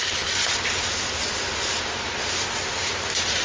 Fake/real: real